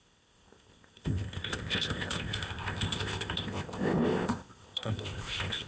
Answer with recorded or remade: remade